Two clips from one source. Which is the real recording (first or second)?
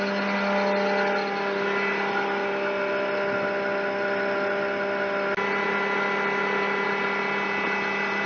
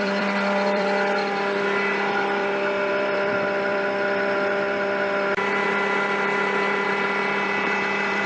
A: first